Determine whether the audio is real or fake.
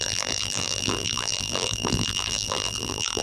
fake